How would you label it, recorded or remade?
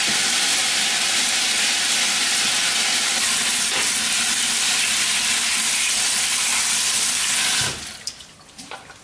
remade